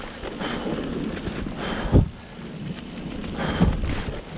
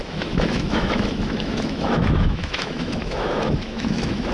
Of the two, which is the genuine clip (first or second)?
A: first